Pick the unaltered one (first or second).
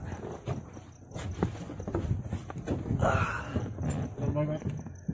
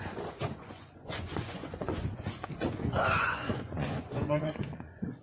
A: first